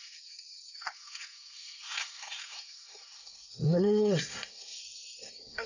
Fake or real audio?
fake